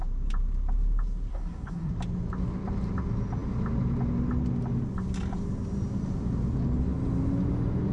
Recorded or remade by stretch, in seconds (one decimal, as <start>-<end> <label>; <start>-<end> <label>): 0.0-1.3 recorded; 1.3-1.9 remade; 1.9-7.9 recorded